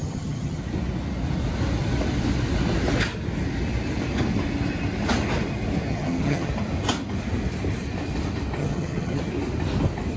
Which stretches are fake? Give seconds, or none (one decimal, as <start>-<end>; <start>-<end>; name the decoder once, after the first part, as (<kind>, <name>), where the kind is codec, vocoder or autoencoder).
0.0-0.6 (vocoder, HiFi-GAN); 5.9-6.5; 8.6-9.2